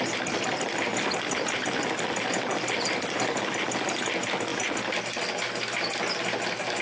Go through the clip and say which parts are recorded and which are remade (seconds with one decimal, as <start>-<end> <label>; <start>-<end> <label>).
0.0-6.8 recorded